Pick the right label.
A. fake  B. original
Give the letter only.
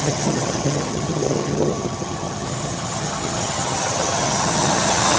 A